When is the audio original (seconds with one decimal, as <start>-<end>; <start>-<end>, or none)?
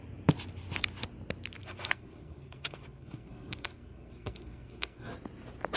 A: 0.0-1.6; 5.1-5.8